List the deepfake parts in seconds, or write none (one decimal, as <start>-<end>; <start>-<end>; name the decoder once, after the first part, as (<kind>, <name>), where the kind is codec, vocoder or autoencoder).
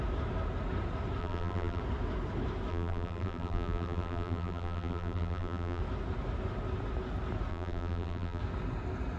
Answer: 1.2-1.8 (vocoder, BigVGAN v2); 2.7-5.8; 7.5-8.4